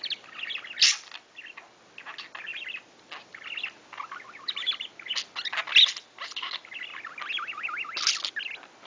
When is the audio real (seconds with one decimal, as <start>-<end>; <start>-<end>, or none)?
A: 0.0-2.5; 4.2-8.9